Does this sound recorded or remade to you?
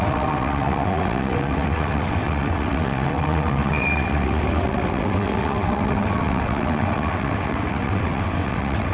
remade